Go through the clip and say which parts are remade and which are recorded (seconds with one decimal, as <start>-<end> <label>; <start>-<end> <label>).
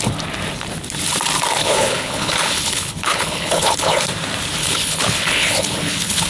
0.0-1.6 recorded; 1.6-4.0 remade; 4.0-4.6 recorded; 4.6-6.3 remade